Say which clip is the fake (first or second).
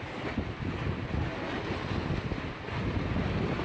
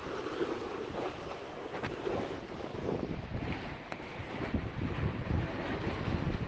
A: second